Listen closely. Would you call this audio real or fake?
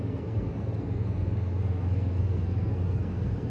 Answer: fake